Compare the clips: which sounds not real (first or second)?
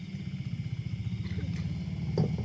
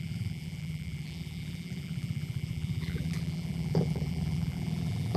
second